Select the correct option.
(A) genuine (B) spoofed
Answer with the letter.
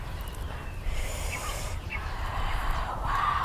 B